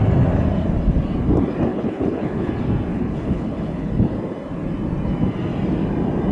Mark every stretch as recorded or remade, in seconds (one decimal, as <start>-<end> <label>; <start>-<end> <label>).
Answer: 0.0-1.7 recorded; 1.7-2.5 remade; 2.5-2.9 recorded; 2.9-3.9 remade; 3.9-6.3 recorded